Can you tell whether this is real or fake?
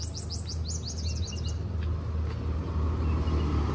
real